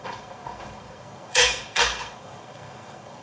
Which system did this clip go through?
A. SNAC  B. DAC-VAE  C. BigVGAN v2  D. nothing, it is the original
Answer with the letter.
A